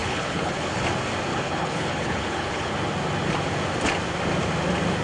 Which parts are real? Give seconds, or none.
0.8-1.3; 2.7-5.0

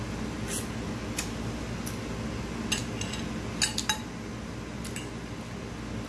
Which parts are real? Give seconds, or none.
0.0-6.1

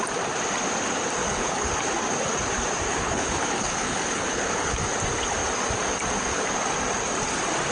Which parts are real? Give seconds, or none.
0.0-1.2; 1.7-2.9; 4.8-7.7